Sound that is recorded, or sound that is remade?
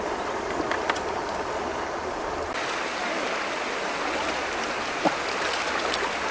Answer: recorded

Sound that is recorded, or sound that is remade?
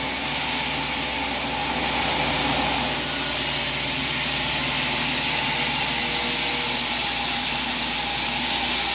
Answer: recorded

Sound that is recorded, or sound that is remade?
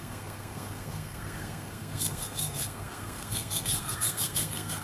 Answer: remade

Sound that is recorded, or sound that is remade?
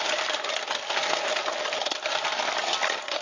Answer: recorded